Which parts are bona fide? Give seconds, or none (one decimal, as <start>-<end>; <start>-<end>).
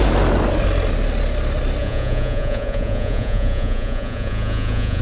0.0-1.8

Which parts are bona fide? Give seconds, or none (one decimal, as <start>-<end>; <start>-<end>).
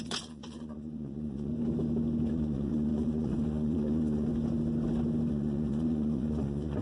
1.5-2.3; 4.3-5.3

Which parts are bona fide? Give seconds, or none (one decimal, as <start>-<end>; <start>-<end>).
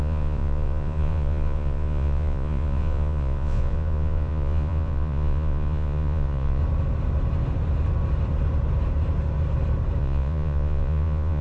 6.6-10.0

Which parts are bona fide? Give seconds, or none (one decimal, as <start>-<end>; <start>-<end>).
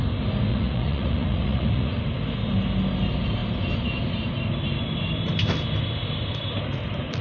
0.0-0.5; 2.0-7.2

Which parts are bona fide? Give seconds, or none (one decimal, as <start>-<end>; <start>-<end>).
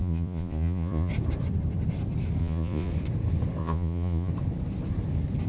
1.1-2.4; 2.9-3.6; 4.3-5.5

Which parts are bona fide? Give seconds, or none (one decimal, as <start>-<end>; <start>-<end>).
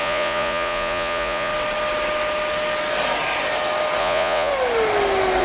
1.5-4.0; 4.5-5.4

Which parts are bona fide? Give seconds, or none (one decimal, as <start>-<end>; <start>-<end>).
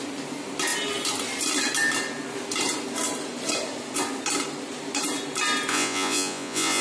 0.0-5.7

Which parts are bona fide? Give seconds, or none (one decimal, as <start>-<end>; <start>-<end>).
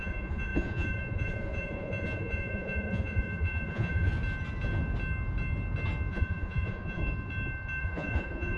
4.1-6.1; 7.0-7.8